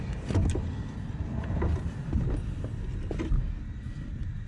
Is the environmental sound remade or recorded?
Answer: recorded